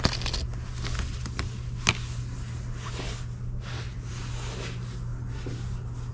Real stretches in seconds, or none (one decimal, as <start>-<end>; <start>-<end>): 0.0-6.1